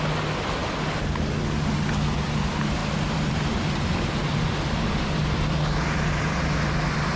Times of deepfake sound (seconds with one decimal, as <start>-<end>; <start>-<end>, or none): 0.6-1.2; 2.8-4.4